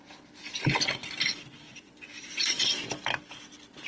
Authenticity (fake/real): real